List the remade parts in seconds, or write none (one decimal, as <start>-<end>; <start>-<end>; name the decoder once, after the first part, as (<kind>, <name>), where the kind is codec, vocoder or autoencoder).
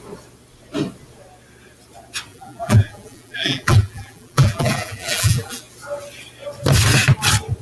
2.3-5.6 (vocoder, BigVGAN v2)